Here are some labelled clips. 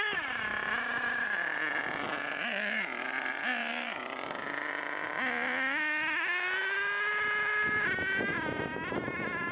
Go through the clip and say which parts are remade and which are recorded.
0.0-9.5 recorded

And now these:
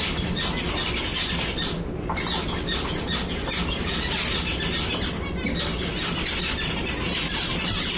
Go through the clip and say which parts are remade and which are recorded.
0.0-1.1 recorded; 1.1-1.8 remade; 1.8-8.0 recorded

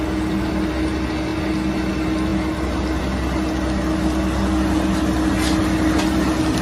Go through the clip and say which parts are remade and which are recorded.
0.0-6.6 recorded

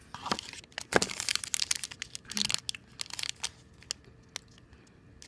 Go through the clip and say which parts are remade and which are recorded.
0.0-5.3 recorded

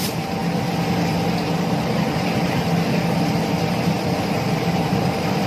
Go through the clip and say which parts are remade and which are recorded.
0.0-0.4 remade; 0.4-3.7 recorded; 3.7-5.5 remade

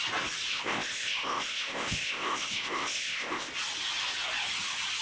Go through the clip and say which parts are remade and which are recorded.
0.0-0.5 recorded; 0.5-3.5 remade; 3.5-5.0 recorded